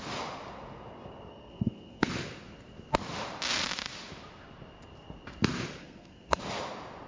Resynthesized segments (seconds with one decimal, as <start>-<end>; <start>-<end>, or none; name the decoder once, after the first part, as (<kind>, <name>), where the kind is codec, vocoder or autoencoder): 1.3-2.1 (codec, SNAC); 5.8-6.4